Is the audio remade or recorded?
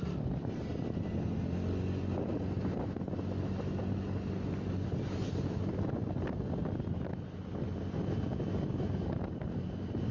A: recorded